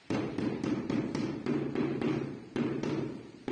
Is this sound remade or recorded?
remade